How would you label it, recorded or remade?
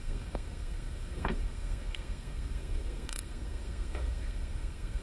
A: remade